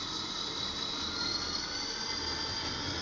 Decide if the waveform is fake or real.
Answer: real